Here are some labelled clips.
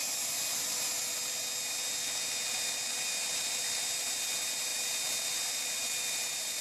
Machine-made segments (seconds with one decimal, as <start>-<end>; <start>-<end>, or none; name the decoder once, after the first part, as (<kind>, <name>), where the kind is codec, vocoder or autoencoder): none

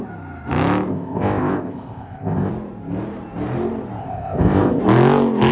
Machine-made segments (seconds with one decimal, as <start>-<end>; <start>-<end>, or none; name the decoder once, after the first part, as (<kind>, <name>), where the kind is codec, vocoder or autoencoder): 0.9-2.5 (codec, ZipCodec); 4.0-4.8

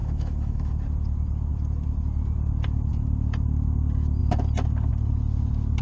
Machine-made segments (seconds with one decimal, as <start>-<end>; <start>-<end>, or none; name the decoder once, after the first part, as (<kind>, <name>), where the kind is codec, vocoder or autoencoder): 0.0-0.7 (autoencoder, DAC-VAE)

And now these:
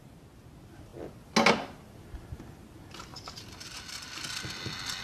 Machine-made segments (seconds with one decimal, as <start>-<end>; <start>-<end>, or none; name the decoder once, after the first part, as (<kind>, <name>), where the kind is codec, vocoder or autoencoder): none

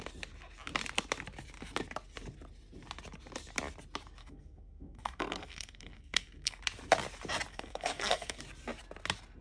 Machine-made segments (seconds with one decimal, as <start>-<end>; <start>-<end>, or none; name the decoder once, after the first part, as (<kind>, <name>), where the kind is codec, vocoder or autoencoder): 4.2-6.6 (codec, SNAC); 7.5-8.4

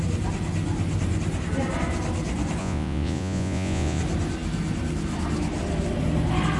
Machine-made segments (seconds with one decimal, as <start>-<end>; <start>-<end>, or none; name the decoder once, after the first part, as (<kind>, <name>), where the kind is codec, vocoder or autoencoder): 2.6-4.0 (vocoder, Vocos)

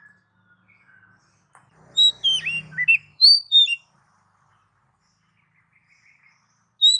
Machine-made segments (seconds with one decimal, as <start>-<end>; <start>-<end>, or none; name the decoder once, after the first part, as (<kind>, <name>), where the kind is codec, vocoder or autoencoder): 3.1-4.5 (vocoder, BigVGAN v2)

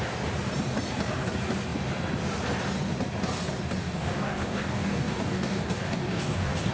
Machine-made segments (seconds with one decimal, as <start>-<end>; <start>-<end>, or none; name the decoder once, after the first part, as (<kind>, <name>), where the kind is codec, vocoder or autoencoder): 3.8-6.7 (codec, DAC)